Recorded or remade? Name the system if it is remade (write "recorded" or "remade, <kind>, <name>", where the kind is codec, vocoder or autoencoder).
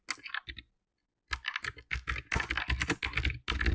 recorded